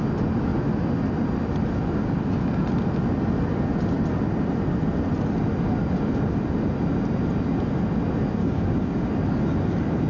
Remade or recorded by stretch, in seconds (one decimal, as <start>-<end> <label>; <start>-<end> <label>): 0.0-8.4 recorded; 8.4-9.1 remade; 9.1-10.1 recorded

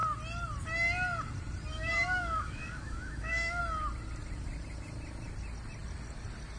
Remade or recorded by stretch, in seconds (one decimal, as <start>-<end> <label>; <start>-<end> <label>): 0.0-1.7 recorded; 1.7-3.6 remade; 3.6-6.6 recorded

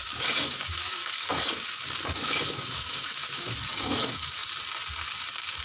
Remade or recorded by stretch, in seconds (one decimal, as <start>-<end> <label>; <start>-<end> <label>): 0.0-4.4 remade; 4.4-5.6 recorded

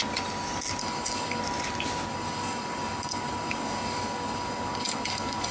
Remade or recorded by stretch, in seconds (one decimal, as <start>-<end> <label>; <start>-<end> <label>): 0.0-0.8 recorded; 0.8-1.4 remade; 1.4-2.1 recorded; 2.1-5.5 remade

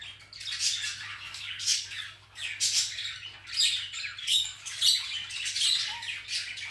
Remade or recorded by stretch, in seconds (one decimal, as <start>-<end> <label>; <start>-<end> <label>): 0.0-1.1 recorded; 1.1-2.6 remade; 2.6-4.2 recorded; 4.2-4.8 remade; 4.8-6.7 recorded

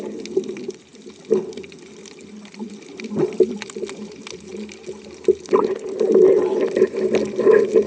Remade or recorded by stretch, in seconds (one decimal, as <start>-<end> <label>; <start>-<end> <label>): 0.0-7.9 recorded

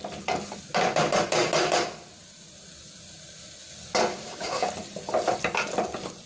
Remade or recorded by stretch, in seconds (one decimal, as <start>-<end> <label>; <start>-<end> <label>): 0.0-4.1 recorded; 4.1-4.7 remade; 4.7-6.3 recorded

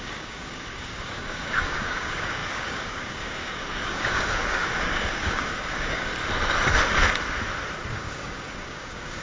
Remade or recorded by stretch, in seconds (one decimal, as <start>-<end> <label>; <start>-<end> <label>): 0.0-6.1 remade; 6.1-7.9 recorded; 7.9-9.2 remade